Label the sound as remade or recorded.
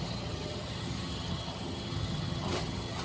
remade